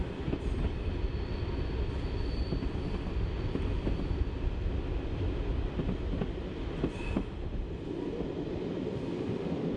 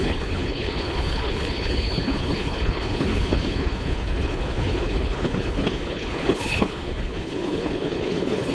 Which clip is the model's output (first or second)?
second